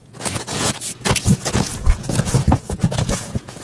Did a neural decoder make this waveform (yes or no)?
yes